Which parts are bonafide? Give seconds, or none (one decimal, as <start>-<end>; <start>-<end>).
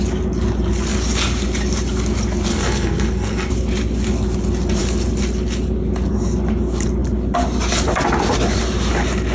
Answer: 0.0-2.5; 3.5-9.3